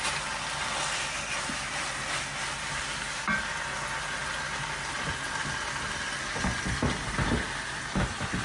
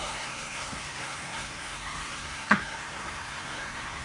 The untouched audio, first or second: first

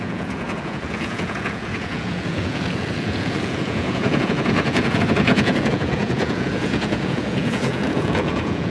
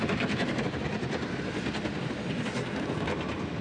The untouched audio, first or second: second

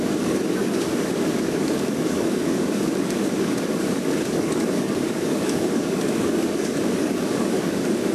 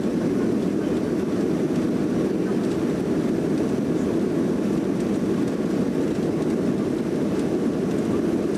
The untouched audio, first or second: second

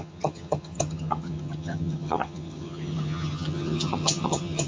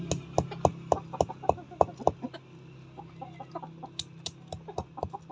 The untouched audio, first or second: second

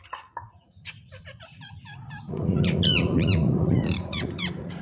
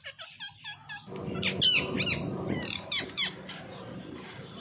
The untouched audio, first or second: second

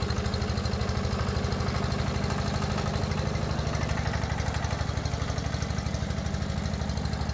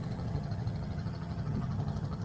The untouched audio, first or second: first